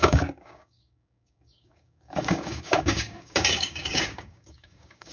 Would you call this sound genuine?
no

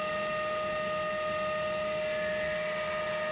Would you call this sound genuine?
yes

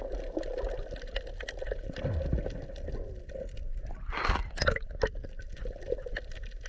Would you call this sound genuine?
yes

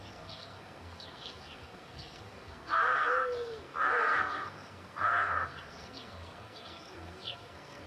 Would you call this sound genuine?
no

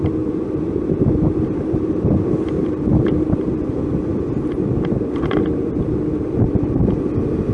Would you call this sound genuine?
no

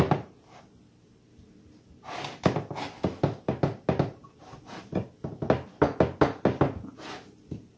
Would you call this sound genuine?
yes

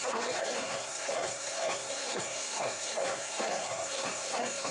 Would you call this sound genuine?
no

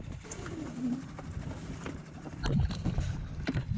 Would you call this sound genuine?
yes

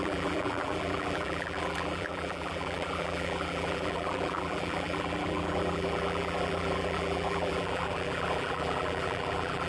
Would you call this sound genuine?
no